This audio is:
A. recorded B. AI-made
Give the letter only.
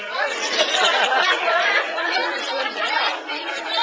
B